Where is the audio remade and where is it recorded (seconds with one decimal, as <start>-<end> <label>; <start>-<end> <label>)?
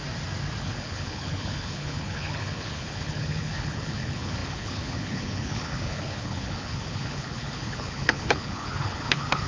0.0-0.6 recorded; 0.6-9.5 remade